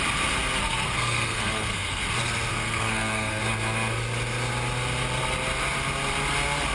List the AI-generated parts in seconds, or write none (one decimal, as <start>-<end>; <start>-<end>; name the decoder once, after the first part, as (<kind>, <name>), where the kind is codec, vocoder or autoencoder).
0.6-2.0 (codec, SNAC); 2.5-3.4